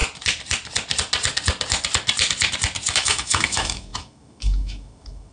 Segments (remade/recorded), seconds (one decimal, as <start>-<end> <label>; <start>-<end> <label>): 0.0-2.9 recorded; 2.9-5.3 remade